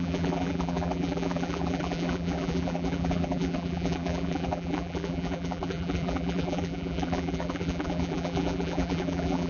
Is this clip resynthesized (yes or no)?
yes